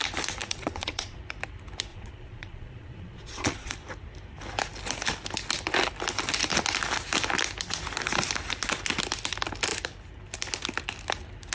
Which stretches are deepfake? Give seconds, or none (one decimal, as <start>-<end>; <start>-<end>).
0.4-1.2; 1.9-3.7